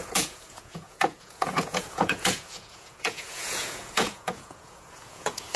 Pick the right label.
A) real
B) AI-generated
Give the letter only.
B